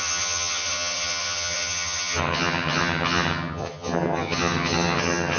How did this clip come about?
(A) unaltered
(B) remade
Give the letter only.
B